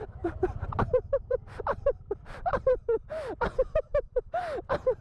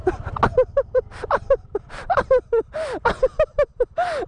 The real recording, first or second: second